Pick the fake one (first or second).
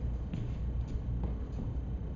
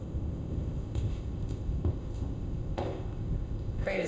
second